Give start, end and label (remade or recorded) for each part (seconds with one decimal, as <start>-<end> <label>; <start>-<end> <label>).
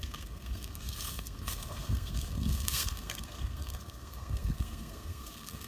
0.0-5.7 remade